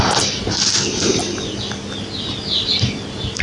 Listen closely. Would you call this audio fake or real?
real